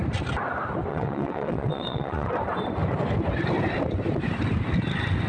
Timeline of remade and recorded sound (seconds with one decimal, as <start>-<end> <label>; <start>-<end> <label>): 0.0-0.9 recorded; 0.9-2.3 remade; 2.3-5.3 recorded